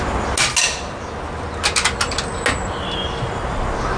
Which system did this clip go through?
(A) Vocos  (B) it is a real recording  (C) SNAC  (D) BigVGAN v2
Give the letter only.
B